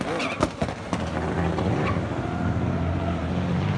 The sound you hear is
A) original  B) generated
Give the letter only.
A